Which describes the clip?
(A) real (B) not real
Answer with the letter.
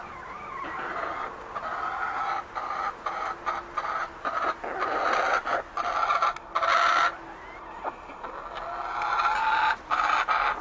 A